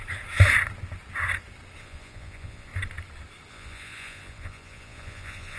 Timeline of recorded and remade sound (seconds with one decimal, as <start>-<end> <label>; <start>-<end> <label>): 0.0-1.8 recorded; 1.8-2.7 remade; 2.7-3.5 recorded; 3.5-5.6 remade